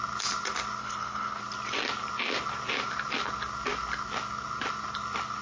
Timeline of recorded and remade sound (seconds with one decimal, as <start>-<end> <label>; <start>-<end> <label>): 0.0-0.8 recorded; 0.8-1.4 remade; 1.4-5.4 recorded